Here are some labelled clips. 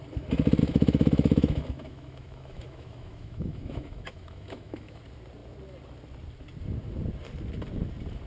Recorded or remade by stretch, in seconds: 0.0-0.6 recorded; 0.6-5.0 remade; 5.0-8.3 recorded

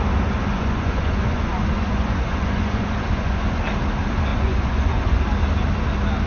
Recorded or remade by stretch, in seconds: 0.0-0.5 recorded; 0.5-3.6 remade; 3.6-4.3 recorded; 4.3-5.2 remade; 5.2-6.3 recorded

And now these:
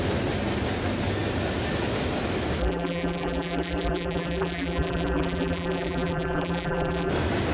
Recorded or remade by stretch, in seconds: 0.0-2.6 recorded; 2.6-7.1 remade; 7.1-7.5 recorded